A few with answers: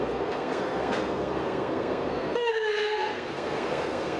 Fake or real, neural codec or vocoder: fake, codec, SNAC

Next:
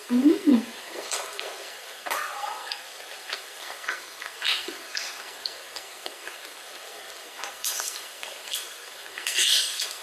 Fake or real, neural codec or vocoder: fake, codec, SNAC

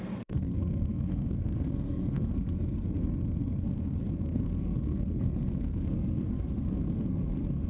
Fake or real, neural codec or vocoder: fake, codec, SNAC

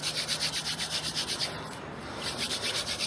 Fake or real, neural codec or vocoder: real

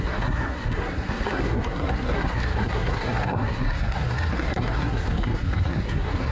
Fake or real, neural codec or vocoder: fake, codec, SNAC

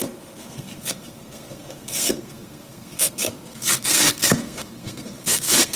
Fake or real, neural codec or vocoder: fake, codec, SNAC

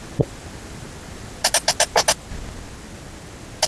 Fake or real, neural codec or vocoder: real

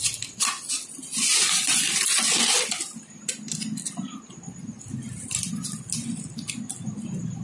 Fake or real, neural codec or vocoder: real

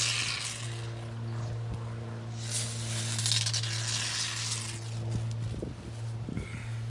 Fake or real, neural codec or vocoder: real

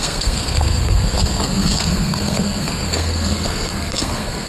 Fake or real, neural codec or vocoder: fake, codec, SNAC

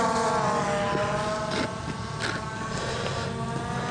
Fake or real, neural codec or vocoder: real